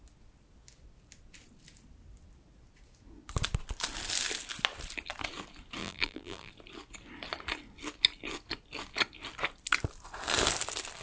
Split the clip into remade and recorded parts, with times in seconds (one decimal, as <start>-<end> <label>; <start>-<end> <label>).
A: 0.0-5.8 recorded; 5.8-6.5 remade; 6.5-11.0 recorded

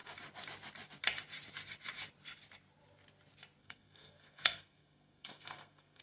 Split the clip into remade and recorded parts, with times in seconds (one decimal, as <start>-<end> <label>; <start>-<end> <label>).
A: 0.0-3.6 recorded; 3.6-6.0 remade

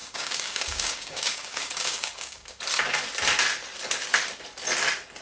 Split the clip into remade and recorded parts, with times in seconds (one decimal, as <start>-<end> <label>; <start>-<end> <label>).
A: 0.0-2.6 remade; 2.6-5.2 recorded

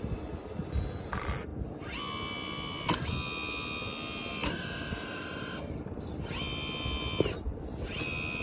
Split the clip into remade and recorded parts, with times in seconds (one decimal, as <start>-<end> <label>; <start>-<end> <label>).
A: 0.0-8.4 recorded